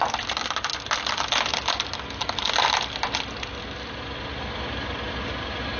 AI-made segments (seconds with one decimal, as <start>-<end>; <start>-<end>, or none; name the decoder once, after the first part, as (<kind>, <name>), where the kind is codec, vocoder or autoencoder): none